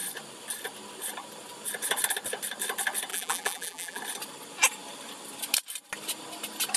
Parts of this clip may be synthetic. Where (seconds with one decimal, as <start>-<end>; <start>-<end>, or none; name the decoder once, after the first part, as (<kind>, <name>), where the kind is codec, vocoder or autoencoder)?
3.1-4.0 (vocoder, BigVGAN v2)